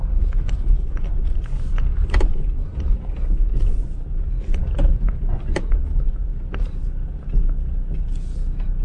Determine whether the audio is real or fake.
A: real